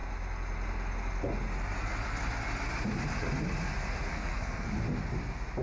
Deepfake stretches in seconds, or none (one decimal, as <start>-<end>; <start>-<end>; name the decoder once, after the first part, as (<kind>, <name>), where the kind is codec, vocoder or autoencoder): 4.1-4.7 (codec, SNAC)